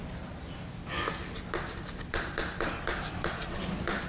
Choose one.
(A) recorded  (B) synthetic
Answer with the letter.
A